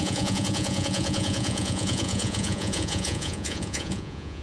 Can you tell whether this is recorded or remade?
remade